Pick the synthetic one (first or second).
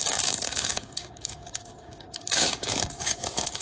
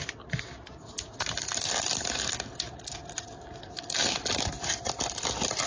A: first